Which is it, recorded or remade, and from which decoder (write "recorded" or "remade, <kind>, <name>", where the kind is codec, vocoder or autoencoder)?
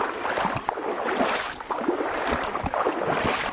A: recorded